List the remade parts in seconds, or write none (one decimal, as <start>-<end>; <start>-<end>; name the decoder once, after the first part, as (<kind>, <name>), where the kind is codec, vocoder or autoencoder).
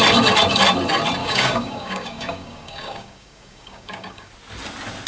1.2-4.3 (codec, DAC)